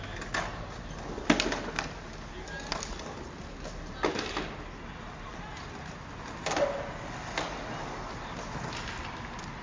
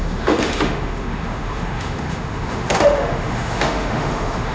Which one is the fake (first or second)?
second